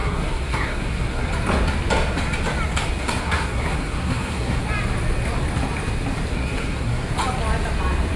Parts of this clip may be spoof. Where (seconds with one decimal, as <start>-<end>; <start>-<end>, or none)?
0.0-1.3; 3.0-4.6; 6.3-7.1